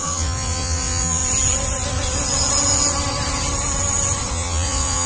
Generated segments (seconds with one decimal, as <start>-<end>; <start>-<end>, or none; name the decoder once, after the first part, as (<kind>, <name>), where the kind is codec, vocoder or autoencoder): 0.0-1.2 (vocoder, Vocos); 4.3-5.1